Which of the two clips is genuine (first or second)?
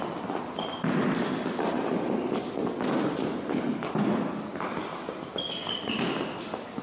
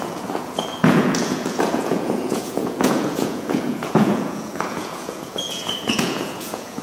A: first